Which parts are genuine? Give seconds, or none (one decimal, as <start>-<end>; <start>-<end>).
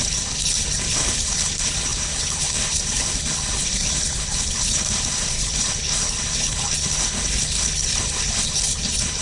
none